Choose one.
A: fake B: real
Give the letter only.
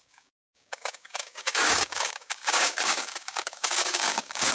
A